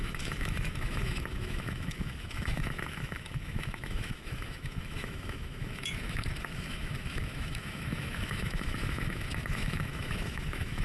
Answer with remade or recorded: remade